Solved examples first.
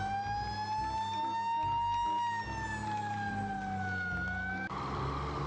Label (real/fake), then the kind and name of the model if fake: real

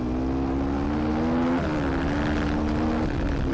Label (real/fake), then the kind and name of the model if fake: real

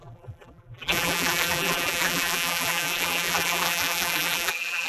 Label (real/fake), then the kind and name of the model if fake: fake, vocoder, BigVGAN v2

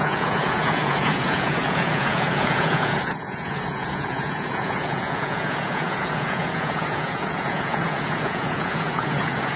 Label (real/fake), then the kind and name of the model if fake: fake, vocoder, Vocos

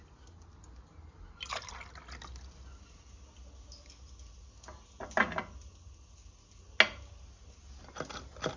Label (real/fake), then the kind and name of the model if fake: real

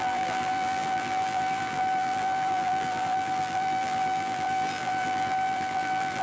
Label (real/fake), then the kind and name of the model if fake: fake, vocoder, BigVGAN v2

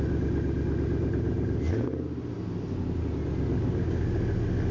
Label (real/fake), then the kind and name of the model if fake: real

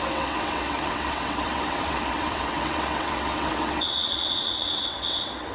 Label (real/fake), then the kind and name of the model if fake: fake, vocoder, WaveNeXt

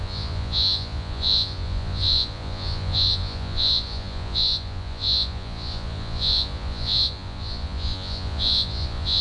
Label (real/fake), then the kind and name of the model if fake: fake, vocoder, Vocos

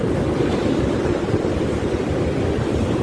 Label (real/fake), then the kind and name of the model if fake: real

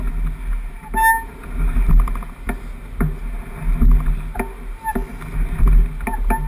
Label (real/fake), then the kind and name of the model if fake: real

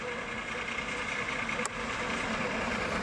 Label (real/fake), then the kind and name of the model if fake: real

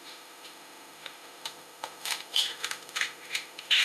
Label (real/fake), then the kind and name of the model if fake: fake, autoencoder, DAC-VAE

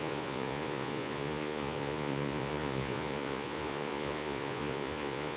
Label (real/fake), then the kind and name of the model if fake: fake, vocoder, Vocos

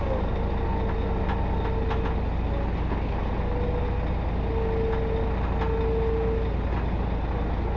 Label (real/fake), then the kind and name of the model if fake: real